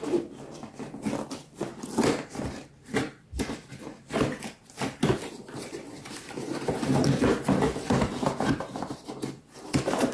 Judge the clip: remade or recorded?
recorded